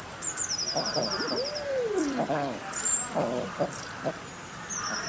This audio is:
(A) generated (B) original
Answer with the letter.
A